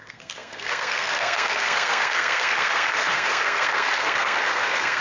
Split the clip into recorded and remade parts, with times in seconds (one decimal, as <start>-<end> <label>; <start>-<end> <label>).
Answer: 0.0-5.0 remade